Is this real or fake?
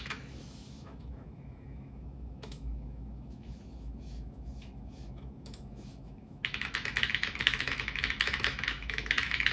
fake